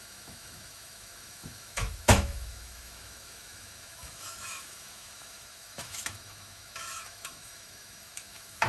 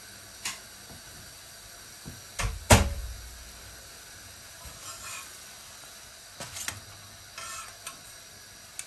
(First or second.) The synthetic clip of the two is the first